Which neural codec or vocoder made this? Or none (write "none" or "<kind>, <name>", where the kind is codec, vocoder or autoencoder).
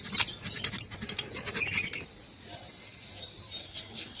none